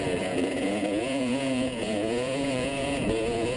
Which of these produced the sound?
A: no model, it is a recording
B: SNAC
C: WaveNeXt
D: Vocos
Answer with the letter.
D